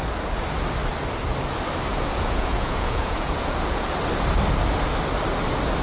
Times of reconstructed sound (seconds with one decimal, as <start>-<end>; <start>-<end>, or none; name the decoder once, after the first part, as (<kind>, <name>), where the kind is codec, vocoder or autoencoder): 1.9-3.9 (vocoder, Vocos)